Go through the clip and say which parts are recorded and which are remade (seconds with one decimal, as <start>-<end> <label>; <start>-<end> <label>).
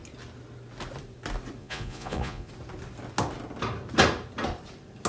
0.0-1.6 recorded; 1.6-2.5 remade; 2.5-5.1 recorded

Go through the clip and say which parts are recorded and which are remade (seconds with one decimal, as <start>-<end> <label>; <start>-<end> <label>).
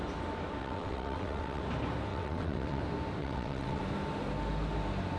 0.0-0.6 recorded; 0.6-1.6 remade; 1.6-2.1 recorded; 2.1-2.8 remade; 2.8-3.2 recorded; 3.2-3.8 remade; 3.8-5.2 recorded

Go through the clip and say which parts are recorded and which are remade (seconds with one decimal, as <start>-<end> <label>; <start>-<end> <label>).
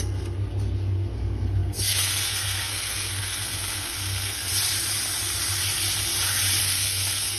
0.0-4.5 remade; 4.5-6.6 recorded; 6.6-7.4 remade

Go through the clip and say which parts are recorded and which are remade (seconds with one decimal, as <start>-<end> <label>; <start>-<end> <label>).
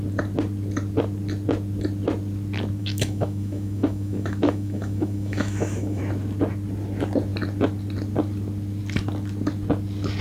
0.0-2.8 recorded; 2.8-6.0 remade; 6.0-10.2 recorded